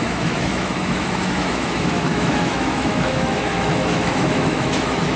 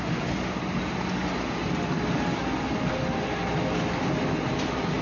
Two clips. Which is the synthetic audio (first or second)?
first